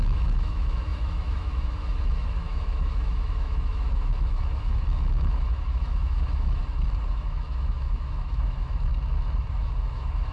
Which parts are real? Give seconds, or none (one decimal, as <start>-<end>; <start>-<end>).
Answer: 6.6-7.1; 8.9-9.8

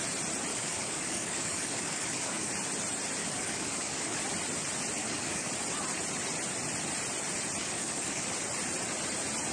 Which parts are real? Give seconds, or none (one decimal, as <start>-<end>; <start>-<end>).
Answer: 0.0-0.5; 2.5-3.2; 4.2-5.0; 5.5-7.6; 8.3-9.5